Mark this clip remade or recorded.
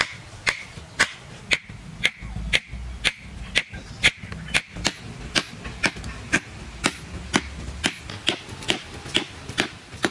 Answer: recorded